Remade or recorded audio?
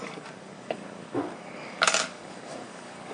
remade